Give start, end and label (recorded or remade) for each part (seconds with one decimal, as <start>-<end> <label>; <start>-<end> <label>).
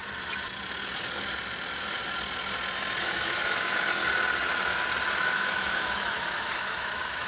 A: 0.0-3.0 recorded; 3.0-4.0 remade; 4.0-5.2 recorded; 5.2-7.3 remade